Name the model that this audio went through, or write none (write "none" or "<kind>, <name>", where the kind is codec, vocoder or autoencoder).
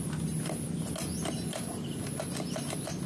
none